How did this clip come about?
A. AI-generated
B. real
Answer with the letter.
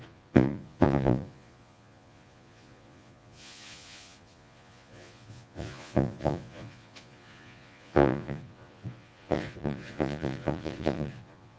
A